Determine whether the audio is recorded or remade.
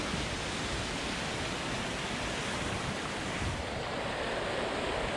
recorded